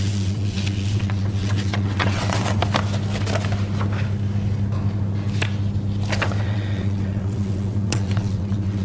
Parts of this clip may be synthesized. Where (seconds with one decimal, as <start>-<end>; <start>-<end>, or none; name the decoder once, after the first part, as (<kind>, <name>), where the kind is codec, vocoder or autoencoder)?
0.0-2.6 (vocoder, WaveNeXt); 6.4-8.8